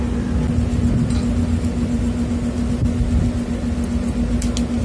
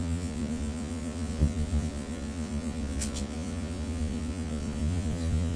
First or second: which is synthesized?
second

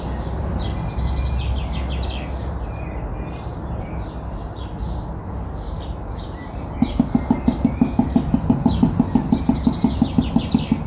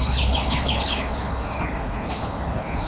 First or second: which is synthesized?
second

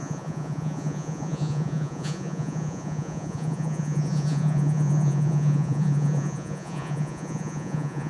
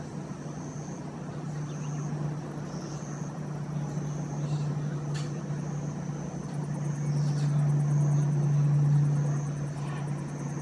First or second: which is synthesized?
first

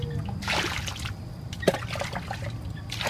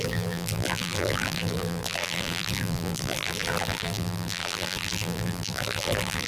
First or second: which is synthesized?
second